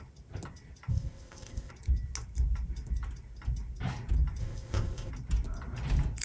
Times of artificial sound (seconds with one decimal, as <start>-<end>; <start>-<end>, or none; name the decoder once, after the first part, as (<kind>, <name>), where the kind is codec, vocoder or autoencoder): 0.9-1.7 (codec, ZipCodec); 4.4-5.1